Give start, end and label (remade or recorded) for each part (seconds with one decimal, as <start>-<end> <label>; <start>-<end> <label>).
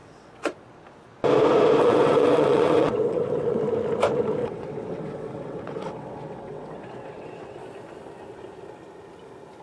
0.0-0.7 remade; 0.7-1.8 recorded; 1.8-3.6 remade; 3.6-4.4 recorded; 4.4-7.6 remade; 7.6-9.6 recorded